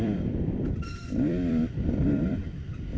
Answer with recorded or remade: remade